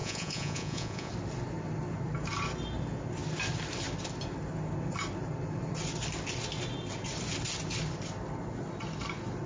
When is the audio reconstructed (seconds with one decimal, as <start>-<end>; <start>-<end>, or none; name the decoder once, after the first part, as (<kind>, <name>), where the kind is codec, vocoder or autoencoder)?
0.0-1.1 (vocoder, Vocos)